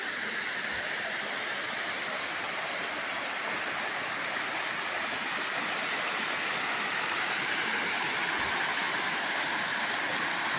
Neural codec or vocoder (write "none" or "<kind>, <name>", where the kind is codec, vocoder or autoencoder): none